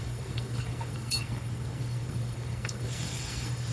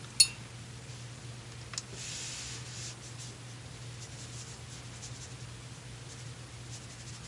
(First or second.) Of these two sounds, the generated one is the first